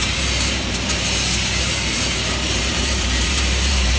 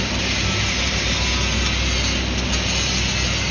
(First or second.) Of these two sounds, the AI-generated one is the first